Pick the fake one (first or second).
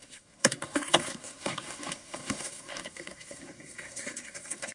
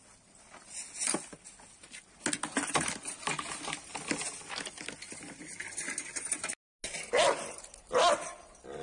first